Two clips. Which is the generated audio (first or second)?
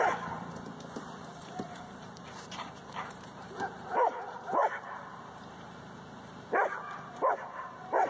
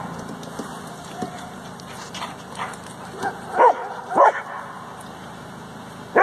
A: first